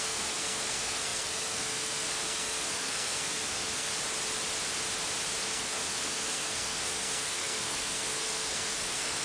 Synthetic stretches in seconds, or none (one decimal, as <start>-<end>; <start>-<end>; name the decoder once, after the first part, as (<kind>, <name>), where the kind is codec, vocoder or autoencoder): 0.0-3.9 (codec, SNAC); 5.4-9.2